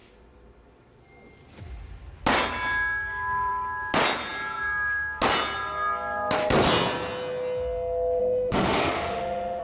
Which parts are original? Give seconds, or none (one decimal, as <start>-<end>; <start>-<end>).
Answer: 0.0-8.2